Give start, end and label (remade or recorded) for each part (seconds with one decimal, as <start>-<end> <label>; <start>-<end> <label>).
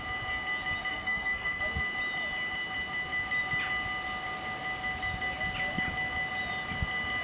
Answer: 0.0-0.9 recorded; 0.9-1.6 remade; 1.6-7.2 recorded